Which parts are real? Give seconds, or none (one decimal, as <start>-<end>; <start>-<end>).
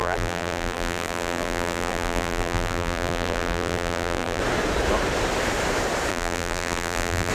4.4-6.1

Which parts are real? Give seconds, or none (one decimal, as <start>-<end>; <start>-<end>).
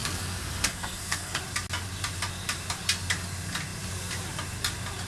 1.4-5.1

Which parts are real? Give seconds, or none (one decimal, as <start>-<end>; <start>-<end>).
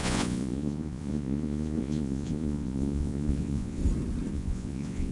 3.8-4.3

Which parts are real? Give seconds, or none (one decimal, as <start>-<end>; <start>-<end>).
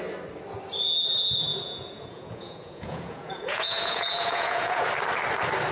0.0-1.5; 4.9-5.7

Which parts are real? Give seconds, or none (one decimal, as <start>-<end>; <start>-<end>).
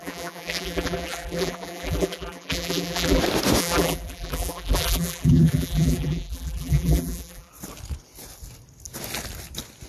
3.2-3.6; 7.5-9.9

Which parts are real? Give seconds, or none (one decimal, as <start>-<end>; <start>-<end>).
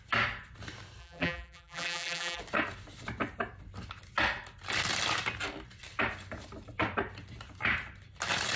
0.0-1.0; 2.4-8.6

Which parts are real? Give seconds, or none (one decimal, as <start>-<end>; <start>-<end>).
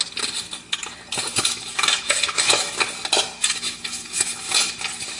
0.0-1.3; 2.8-3.4; 4.7-5.2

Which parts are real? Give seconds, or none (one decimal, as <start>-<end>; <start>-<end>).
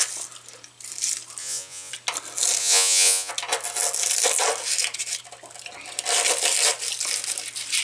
0.0-1.4; 1.9-2.6; 3.3-7.8